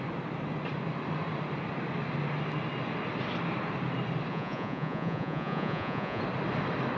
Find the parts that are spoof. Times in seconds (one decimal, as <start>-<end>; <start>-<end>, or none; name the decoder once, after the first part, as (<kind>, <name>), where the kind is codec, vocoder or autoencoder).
4.3-6.2 (vocoder, Vocos)